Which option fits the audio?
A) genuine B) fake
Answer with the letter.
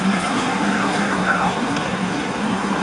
B